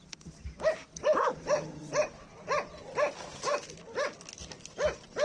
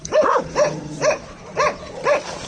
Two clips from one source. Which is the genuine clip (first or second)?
first